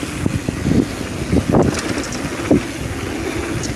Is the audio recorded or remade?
recorded